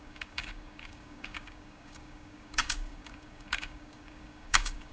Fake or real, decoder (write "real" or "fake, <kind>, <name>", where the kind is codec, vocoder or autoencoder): fake, codec, DAC